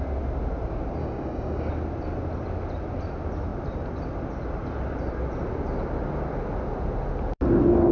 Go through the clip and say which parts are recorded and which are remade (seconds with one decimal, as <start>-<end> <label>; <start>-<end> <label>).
0.0-1.0 recorded; 1.0-1.7 remade; 1.7-7.9 recorded

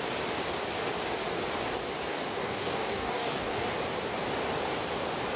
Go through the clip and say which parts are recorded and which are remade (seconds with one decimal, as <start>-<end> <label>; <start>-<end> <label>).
0.0-2.1 recorded; 2.1-3.7 remade; 3.7-5.4 recorded

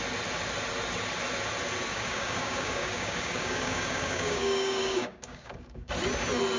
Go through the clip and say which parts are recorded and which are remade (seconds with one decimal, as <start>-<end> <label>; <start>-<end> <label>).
0.0-1.9 recorded; 1.9-5.9 remade; 5.9-6.6 recorded

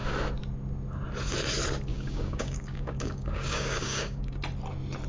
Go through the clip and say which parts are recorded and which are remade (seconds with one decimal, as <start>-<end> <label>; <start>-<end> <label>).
0.0-1.9 recorded; 1.9-4.4 remade; 4.4-5.1 recorded

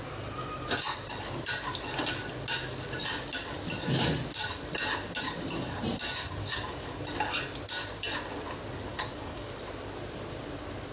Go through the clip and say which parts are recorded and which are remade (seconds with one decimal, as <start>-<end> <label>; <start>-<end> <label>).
0.0-6.2 recorded; 6.2-7.0 remade; 7.0-8.9 recorded; 8.9-9.5 remade; 9.5-10.9 recorded